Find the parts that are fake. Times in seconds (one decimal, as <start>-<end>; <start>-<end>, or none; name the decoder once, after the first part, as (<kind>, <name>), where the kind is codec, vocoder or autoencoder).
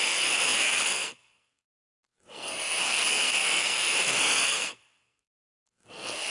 0.0-6.3 (codec, SNAC)